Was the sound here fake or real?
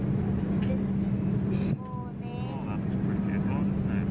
real